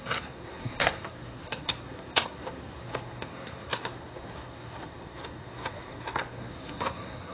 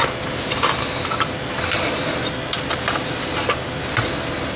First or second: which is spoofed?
first